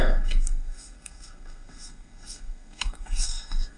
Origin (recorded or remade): remade